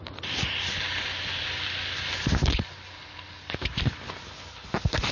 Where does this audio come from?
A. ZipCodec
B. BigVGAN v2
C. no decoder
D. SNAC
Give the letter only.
C